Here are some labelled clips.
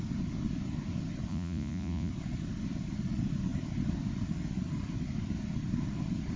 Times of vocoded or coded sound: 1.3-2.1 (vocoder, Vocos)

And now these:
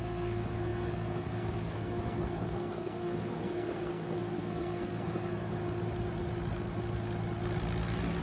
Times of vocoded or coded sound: 0.0-5.6 (codec, SNAC)

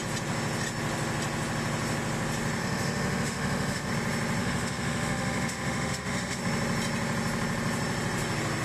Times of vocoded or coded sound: 2.6-3.9 (autoencoder, DAC-VAE); 4.4-6.4

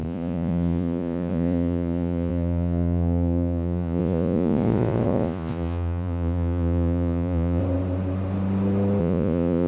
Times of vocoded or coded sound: 0.0-7.6 (vocoder, Vocos); 9.0-9.7

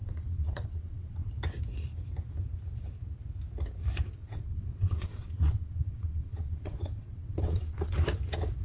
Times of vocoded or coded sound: 0.0-1.3 (vocoder, WaveNeXt); 4.2-7.9